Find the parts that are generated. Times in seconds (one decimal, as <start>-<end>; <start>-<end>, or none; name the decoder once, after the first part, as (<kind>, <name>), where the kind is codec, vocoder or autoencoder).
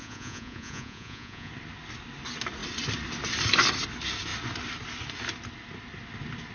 0.0-1.5 (vocoder, Vocos)